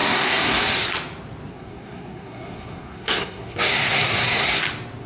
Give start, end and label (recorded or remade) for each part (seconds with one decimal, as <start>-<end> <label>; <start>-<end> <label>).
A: 0.0-0.6 remade; 0.6-1.5 recorded; 1.5-4.6 remade; 4.6-5.1 recorded